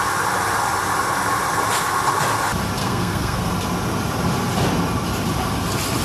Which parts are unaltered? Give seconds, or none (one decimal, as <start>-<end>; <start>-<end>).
0.0-2.8; 3.5-6.0